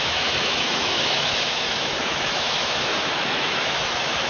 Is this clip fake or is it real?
fake